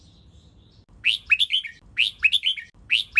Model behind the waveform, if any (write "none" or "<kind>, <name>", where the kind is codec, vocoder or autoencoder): none